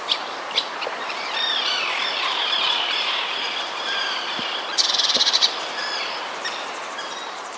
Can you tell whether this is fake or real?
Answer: fake